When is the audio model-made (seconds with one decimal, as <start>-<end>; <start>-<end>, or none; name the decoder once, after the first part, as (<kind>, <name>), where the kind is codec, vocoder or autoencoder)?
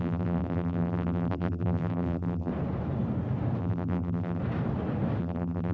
0.0-2.5 (vocoder, BigVGAN v2); 3.6-4.4; 5.2-5.7